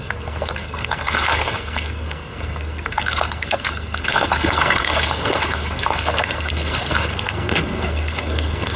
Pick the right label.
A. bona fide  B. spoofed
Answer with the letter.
B